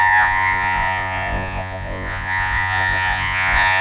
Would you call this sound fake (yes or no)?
yes